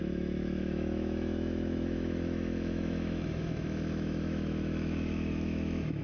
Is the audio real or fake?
fake